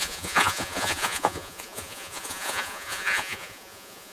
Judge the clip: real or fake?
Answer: fake